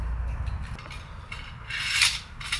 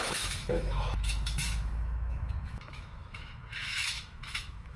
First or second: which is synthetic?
second